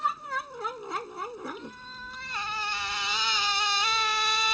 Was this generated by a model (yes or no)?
no